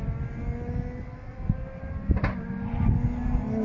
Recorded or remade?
recorded